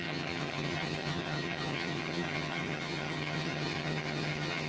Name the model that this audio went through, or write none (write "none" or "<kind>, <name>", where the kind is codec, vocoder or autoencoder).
vocoder, HiFi-GAN